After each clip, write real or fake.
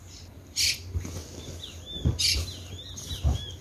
real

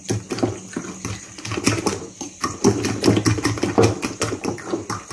real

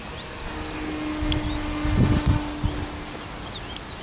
real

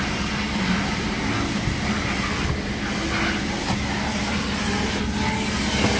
real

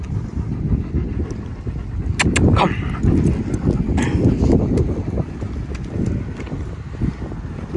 real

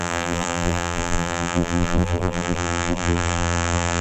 fake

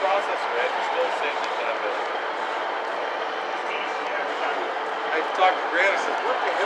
real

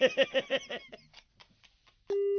real